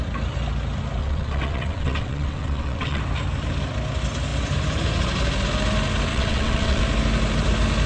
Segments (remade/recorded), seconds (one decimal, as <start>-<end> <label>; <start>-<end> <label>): 0.0-1.0 recorded; 1.0-3.0 remade; 3.0-6.1 recorded; 6.1-6.8 remade; 6.8-7.9 recorded